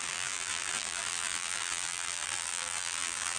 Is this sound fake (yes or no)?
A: yes